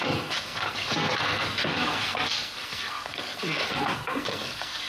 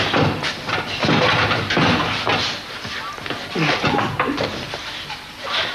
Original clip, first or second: second